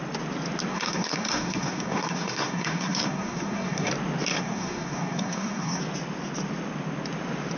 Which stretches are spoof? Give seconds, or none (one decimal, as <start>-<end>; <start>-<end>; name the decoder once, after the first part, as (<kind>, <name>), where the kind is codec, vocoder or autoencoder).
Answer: 0.7-3.9 (codec, SNAC); 4.3-5.8